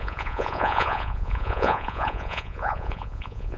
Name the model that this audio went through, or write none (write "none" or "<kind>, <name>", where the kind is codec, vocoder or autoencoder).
vocoder, Vocos